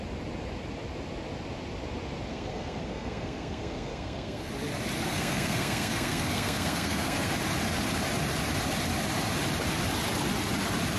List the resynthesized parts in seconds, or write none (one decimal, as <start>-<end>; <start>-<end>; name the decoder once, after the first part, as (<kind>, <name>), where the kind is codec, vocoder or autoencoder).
2.3-4.5 (codec, SNAC); 5.1-7.3